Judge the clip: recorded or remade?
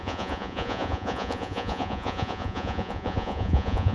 remade